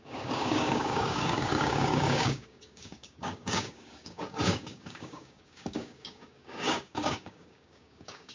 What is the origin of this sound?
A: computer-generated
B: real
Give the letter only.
A